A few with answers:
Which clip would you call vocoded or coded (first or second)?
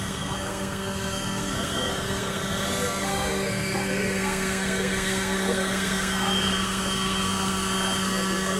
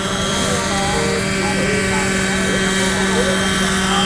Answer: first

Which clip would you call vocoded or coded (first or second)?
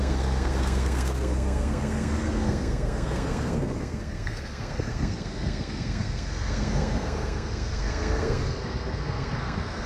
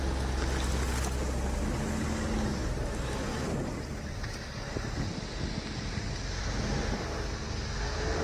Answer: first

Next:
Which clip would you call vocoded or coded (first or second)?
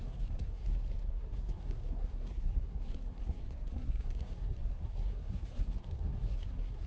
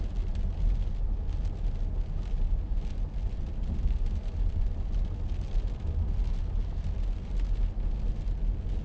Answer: first